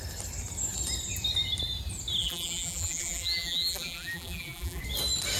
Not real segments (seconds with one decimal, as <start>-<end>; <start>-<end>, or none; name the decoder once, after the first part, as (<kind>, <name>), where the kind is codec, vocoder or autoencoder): 2.2-4.8 (vocoder, BigVGAN v2)